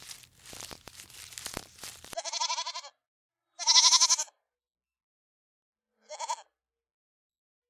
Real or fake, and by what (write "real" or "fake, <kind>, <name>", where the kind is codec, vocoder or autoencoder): real